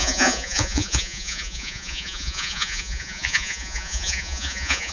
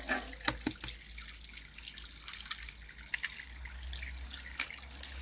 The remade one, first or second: first